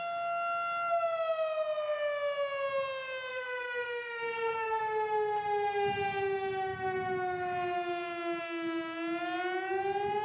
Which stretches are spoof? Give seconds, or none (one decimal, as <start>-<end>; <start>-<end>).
3.3-4.8